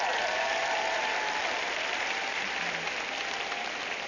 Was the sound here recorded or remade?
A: recorded